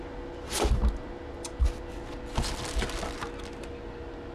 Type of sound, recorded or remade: recorded